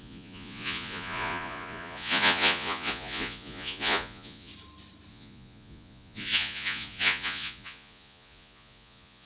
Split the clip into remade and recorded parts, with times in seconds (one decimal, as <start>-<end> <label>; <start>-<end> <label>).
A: 0.0-4.5 remade; 4.5-5.1 recorded; 5.1-9.3 remade

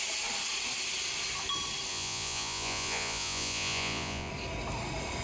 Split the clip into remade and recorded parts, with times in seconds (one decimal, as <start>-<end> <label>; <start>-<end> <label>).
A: 0.0-1.9 recorded; 1.9-4.3 remade; 4.3-5.2 recorded

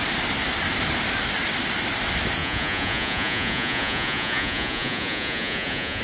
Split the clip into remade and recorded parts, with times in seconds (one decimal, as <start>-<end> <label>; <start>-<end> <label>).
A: 0.0-2.4 recorded; 2.4-6.0 remade

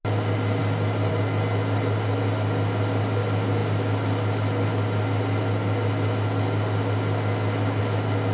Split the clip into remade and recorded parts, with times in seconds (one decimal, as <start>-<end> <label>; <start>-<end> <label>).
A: 0.0-8.3 recorded

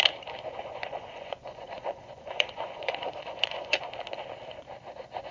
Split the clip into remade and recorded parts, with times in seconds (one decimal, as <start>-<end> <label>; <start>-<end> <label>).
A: 0.0-0.6 recorded; 0.6-3.8 remade; 3.8-5.3 recorded

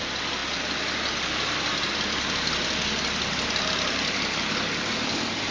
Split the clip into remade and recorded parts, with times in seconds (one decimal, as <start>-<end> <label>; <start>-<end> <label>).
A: 0.0-5.5 recorded

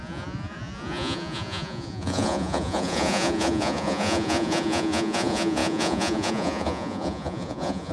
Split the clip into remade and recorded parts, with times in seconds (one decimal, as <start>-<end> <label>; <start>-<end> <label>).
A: 0.0-7.9 remade